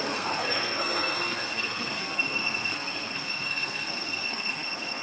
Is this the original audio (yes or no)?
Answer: no